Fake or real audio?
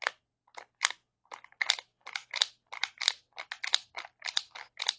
real